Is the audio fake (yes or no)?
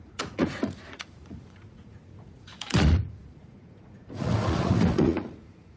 yes